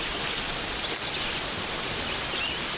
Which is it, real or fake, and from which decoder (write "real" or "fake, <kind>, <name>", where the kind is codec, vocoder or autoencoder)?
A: real